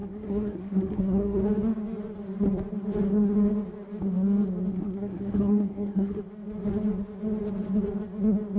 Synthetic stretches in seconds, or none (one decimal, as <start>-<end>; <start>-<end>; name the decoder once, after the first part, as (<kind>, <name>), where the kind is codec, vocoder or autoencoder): 0.0-1.4 (codec, SNAC); 4.7-6.2